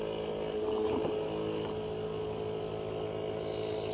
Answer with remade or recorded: recorded